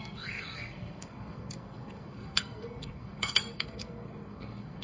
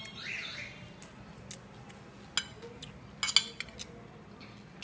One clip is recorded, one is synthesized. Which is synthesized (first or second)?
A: first